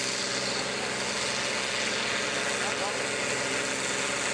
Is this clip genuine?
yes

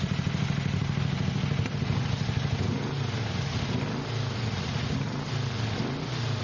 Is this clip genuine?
yes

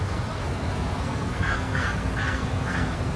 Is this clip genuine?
no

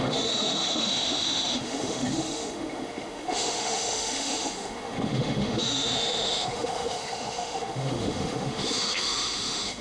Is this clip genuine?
no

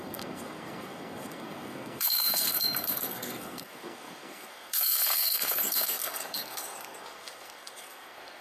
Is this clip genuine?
no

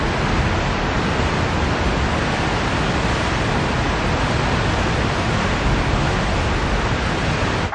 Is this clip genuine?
yes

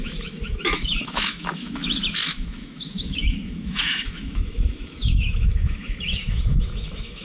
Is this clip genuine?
no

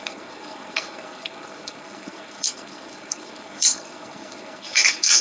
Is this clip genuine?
no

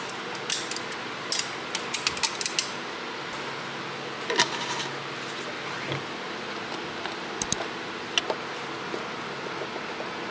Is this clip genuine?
yes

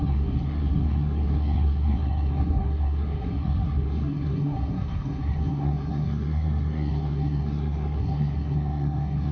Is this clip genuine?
no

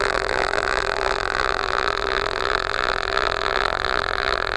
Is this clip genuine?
no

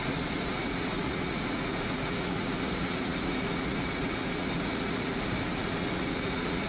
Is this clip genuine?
no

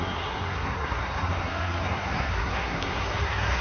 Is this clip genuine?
no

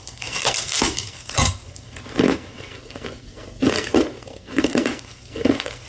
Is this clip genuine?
no